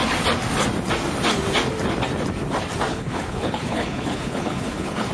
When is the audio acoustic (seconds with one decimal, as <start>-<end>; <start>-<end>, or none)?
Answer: 0.0-2.9